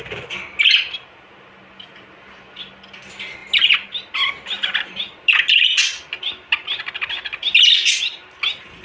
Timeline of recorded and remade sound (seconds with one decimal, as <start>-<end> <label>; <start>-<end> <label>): 0.0-8.8 recorded